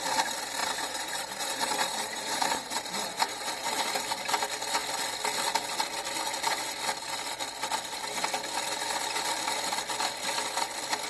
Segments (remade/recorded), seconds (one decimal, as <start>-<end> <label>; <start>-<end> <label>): 0.0-0.6 recorded; 0.6-3.9 remade; 3.9-11.1 recorded